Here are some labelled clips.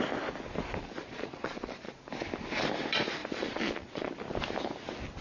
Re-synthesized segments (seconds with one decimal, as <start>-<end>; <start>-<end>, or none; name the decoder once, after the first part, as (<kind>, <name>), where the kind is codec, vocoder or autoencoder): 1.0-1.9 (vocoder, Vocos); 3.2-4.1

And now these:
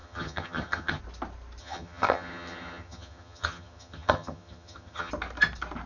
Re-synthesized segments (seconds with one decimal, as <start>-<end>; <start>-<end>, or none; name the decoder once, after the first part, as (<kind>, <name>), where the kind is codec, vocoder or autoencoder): 0.0-1.0 (vocoder, HiFi-GAN); 1.6-5.1

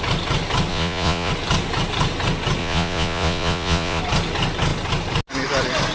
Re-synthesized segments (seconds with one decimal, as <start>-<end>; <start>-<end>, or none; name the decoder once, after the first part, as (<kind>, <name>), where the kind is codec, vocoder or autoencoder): 0.7-1.3 (vocoder, Vocos); 2.6-4.0

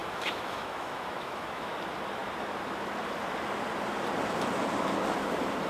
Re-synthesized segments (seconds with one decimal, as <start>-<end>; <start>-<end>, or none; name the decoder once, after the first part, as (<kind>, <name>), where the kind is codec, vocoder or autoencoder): 0.0-1.7 (autoencoder, DAC-VAE)